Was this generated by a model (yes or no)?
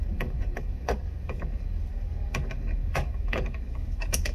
yes